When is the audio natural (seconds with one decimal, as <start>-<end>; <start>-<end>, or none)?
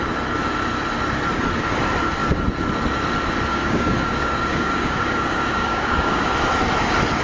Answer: 0.0-3.5; 6.3-7.2